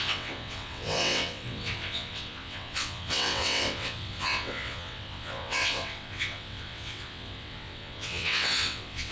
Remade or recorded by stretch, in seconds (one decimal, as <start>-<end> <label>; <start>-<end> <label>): 0.0-9.1 remade